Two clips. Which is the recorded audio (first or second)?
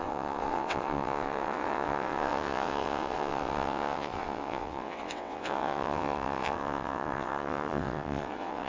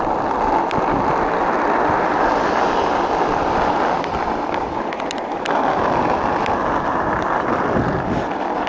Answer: second